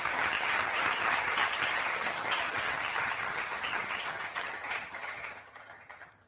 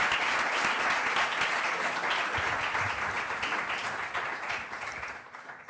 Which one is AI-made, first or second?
first